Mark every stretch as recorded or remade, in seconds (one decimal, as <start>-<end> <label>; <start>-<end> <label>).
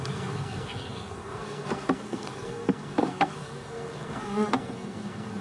0.0-5.4 remade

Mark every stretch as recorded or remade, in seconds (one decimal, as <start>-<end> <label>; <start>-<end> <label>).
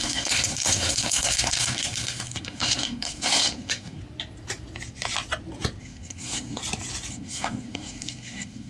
0.0-4.0 remade; 4.0-5.8 recorded; 5.8-6.6 remade; 6.6-7.1 recorded; 7.1-8.7 remade